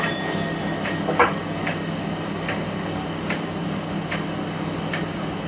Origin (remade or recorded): remade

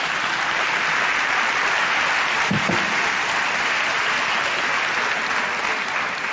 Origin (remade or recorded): recorded